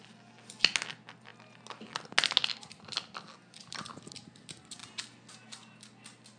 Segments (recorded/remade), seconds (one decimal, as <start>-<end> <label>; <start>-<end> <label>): 0.0-6.4 recorded